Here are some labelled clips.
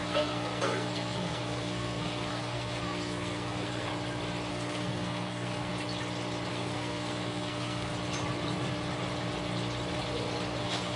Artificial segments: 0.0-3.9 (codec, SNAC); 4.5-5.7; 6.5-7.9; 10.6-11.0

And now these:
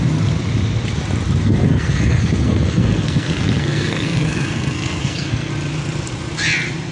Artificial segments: 1.4-5.5 (codec, SNAC)

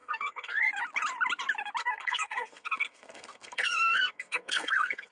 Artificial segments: 0.0-0.7 (codec, SNAC); 1.8-5.1

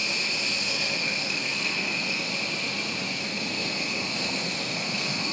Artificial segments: 0.6-2.3 (codec, SNAC); 3.2-5.3

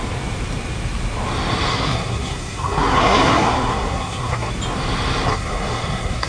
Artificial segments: 1.7-4.5 (codec, SNAC); 5.3-6.3